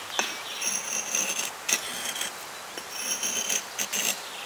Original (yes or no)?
yes